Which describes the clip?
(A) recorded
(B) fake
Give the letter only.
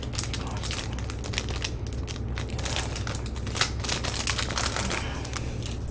A